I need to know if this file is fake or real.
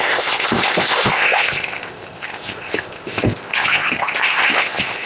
fake